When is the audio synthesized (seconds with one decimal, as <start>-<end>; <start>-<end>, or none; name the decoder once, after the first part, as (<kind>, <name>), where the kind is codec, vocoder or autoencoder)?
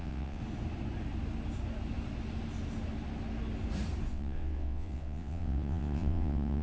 0.0-0.4 (vocoder, WaveNeXt); 4.1-6.6